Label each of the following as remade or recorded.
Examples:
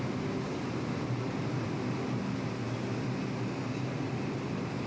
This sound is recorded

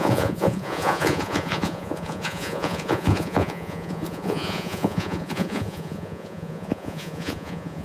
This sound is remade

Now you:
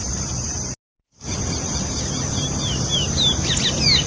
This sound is recorded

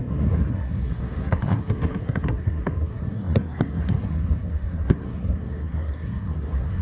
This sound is remade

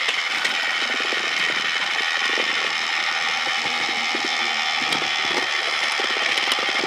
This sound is recorded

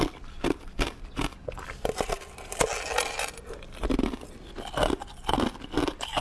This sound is recorded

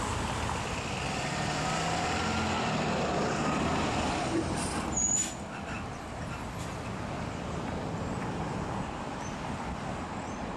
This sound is recorded